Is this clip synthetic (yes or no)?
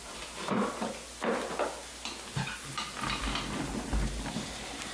no